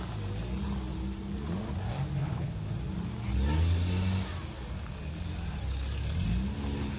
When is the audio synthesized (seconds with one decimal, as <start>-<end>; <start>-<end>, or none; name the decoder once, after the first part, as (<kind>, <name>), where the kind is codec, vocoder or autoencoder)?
2.2-2.7 (codec, HILCodec)